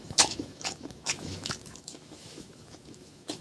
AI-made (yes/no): yes